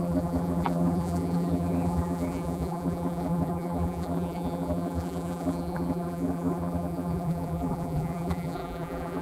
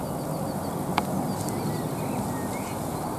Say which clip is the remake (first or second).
first